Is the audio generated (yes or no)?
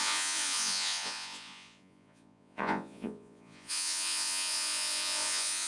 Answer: yes